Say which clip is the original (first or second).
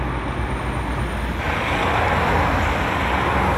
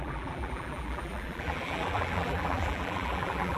first